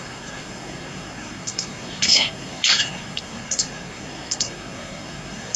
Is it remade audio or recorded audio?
remade